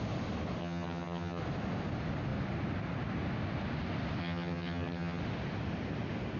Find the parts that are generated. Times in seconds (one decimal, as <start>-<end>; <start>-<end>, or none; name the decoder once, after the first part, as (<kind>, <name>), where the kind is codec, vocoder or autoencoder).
0.6-1.4 (vocoder, HiFi-GAN); 4.2-5.2